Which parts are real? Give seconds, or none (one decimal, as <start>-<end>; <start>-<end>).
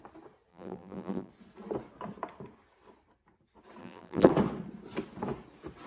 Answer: 0.0-0.5; 1.3-3.8; 4.3-5.9